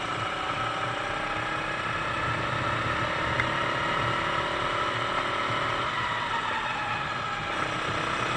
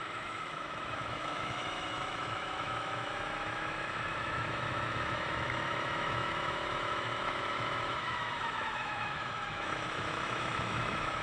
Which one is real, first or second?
first